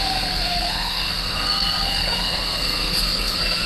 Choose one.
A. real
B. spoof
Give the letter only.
B